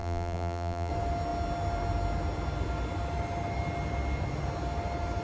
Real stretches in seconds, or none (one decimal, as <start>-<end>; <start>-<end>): 0.9-5.2